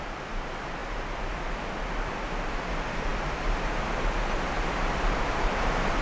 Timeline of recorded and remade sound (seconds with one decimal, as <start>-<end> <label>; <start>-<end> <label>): 0.0-0.8 remade; 0.8-2.5 recorded; 2.5-6.0 remade